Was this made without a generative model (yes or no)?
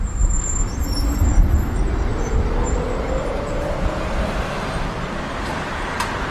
yes